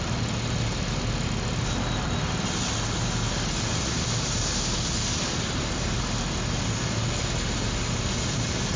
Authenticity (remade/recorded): recorded